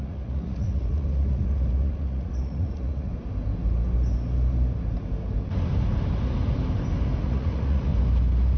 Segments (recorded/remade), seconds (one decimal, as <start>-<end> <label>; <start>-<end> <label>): 0.0-3.1 remade; 3.1-7.2 recorded; 7.2-7.9 remade; 7.9-8.6 recorded

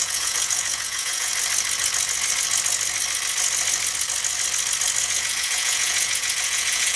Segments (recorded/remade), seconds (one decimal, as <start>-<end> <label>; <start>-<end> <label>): 0.0-1.3 remade; 1.3-5.0 recorded; 5.0-7.0 remade

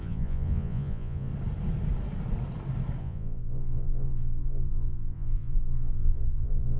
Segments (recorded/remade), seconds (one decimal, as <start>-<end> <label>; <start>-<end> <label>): 0.0-1.3 remade; 1.3-3.0 recorded; 3.0-6.8 remade

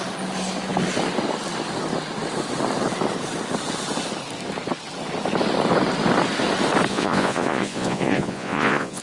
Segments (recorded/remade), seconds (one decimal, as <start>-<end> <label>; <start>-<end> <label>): 0.0-6.9 recorded; 6.9-9.0 remade

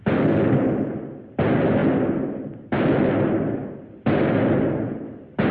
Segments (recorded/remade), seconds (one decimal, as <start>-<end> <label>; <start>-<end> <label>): 0.0-5.5 recorded

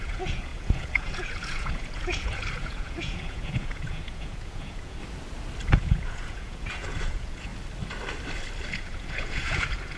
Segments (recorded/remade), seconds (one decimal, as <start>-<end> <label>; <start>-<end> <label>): 0.0-5.0 remade; 5.0-5.7 recorded; 5.7-7.5 remade; 7.5-8.7 recorded; 8.7-10.0 remade